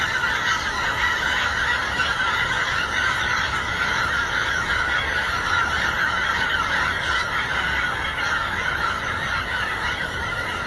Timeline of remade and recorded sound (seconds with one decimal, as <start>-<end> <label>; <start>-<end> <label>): 0.0-10.7 remade